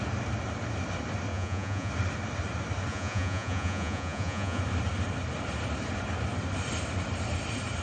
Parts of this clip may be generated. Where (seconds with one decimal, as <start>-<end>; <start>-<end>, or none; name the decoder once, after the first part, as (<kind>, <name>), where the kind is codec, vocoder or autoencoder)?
1.3-1.9 (vocoder, Vocos); 2.9-4.6